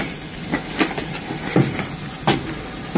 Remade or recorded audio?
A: recorded